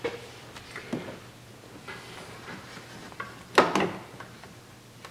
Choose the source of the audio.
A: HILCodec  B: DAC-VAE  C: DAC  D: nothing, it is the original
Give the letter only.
D